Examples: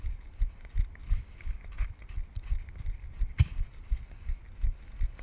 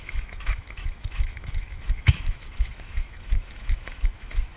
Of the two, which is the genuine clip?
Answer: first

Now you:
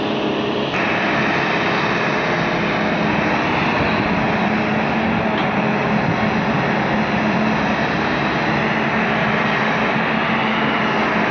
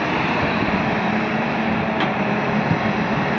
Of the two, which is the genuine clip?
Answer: first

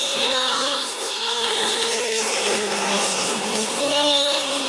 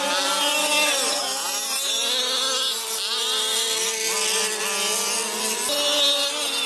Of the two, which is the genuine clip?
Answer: second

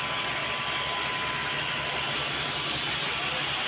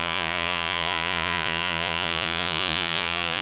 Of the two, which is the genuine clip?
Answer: first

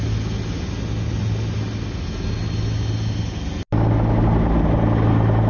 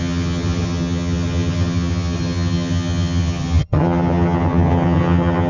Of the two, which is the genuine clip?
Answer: first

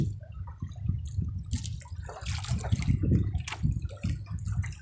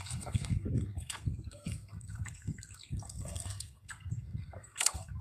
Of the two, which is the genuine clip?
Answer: first